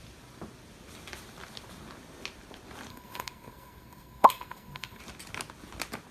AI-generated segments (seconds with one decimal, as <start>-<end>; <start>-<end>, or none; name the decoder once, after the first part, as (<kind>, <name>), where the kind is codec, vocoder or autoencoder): 2.9-5.0 (codec, SNAC)